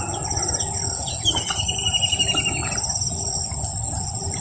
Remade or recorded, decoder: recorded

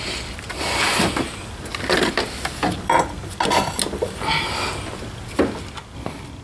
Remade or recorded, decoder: recorded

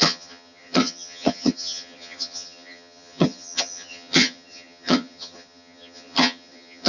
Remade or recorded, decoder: remade, vocoder, HiFi-GAN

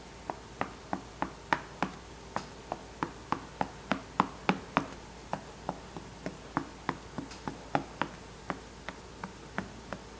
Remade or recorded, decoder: recorded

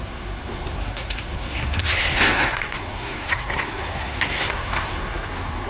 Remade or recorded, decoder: remade, codec, SNAC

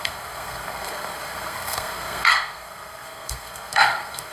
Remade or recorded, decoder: remade, codec, SNAC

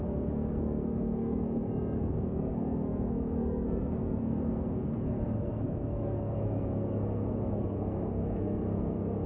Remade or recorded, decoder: remade, codec, SNAC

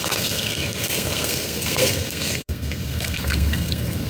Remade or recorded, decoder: remade, codec, SNAC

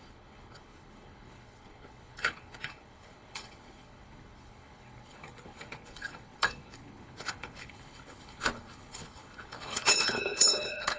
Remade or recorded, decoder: remade, codec, HILCodec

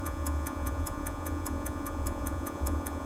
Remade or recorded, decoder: remade, vocoder, Vocos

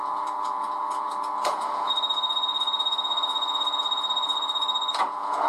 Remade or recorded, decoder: remade, vocoder, Vocos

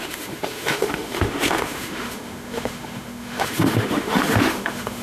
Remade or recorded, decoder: remade, autoencoder, DAC-VAE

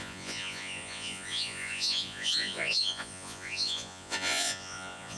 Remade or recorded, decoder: remade, vocoder, Vocos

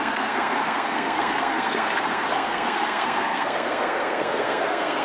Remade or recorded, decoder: remade, codec, SNAC